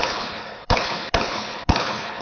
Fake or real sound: fake